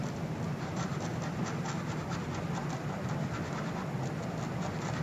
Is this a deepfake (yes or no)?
no